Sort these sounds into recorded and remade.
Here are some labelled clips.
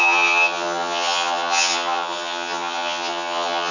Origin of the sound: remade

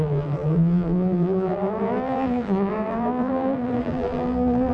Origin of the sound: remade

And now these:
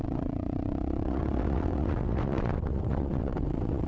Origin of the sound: remade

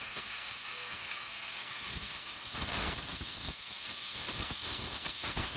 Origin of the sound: remade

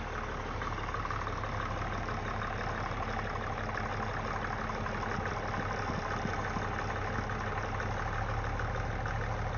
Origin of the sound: recorded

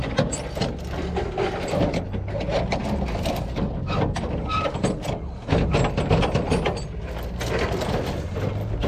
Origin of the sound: recorded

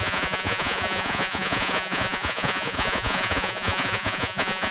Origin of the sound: remade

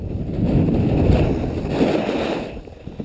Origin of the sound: recorded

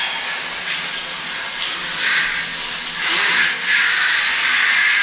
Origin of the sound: recorded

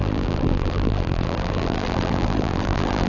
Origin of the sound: remade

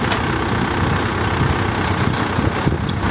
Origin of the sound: recorded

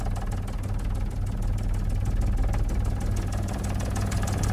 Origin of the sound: recorded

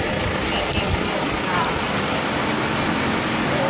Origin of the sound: recorded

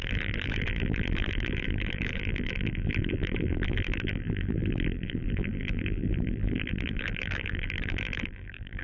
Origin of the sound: remade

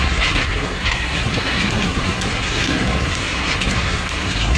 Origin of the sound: remade